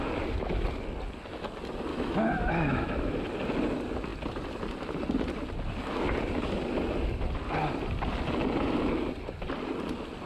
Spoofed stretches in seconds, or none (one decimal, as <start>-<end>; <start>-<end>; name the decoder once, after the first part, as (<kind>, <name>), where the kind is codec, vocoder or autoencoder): 1.9-3.1 (autoencoder, DAC-VAE)